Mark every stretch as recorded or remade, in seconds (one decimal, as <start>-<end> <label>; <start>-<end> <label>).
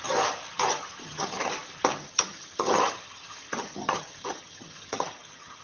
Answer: 0.0-1.0 recorded; 1.0-1.5 remade; 1.5-2.1 recorded; 2.1-5.6 remade